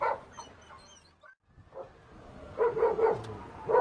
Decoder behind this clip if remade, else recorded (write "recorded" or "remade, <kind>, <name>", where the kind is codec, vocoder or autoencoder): recorded